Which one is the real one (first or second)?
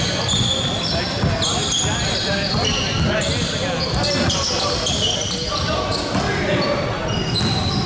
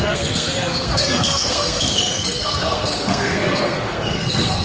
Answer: first